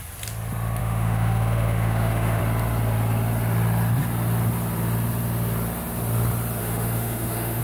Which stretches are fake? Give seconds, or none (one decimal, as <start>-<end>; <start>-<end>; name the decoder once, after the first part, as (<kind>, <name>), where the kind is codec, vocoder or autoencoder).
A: 0.8-2.4 (autoencoder, DAC-VAE); 6.6-7.6